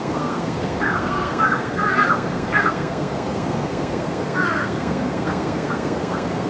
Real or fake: fake